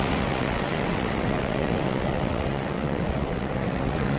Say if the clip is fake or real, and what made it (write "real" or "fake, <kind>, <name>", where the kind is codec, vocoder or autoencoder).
fake, vocoder, WaveNeXt